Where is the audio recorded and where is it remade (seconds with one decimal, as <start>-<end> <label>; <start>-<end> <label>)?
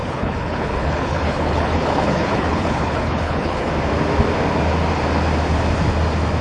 0.0-3.7 remade; 3.7-6.4 recorded